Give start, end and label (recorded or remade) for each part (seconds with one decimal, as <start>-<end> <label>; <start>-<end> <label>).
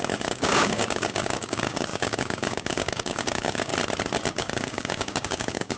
0.0-3.7 remade; 3.7-4.3 recorded; 4.3-5.8 remade